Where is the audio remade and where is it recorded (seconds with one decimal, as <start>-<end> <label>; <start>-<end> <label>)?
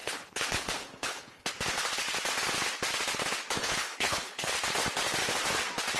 0.0-1.5 remade; 1.5-3.6 recorded; 3.6-4.5 remade; 4.5-6.0 recorded